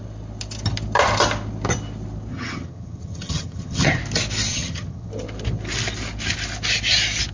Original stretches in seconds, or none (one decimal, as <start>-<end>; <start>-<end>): 0.0-2.3; 4.0-4.5; 5.1-7.3